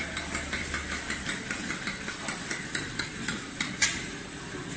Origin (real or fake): real